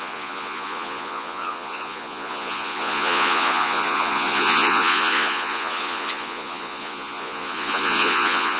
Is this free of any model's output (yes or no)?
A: no